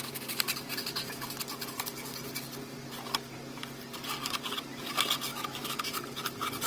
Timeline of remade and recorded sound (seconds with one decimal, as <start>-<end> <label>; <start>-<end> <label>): 0.0-5.3 recorded; 5.3-5.8 remade; 5.8-6.7 recorded